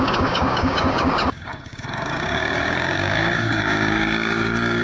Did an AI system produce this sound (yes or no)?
yes